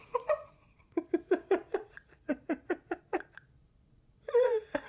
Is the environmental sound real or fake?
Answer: fake